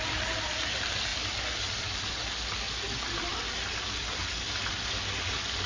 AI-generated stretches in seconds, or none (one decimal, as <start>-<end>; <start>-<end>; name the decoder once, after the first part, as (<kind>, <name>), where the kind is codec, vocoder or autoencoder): 0.0-1.1 (vocoder, BigVGAN v2); 1.8-2.2